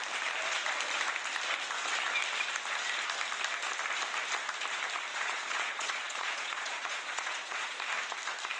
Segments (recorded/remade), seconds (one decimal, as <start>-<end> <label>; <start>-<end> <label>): 0.0-5.1 recorded; 5.1-7.8 remade; 7.8-8.6 recorded